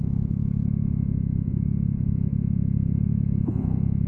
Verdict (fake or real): fake